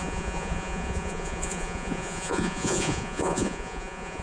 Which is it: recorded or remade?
remade